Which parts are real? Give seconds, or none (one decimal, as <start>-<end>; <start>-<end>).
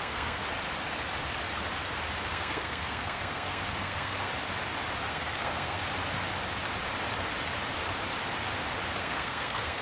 0.4-2.3; 4.3-5.1; 5.8-9.0